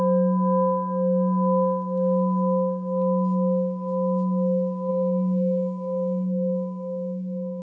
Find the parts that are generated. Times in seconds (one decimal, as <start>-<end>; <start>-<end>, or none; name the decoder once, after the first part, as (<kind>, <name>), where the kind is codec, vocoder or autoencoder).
4.9-7.6 (codec, SNAC)